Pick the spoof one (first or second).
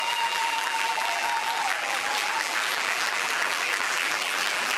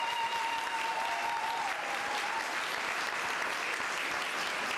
first